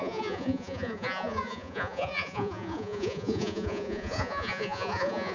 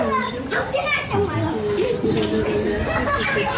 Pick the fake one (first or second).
first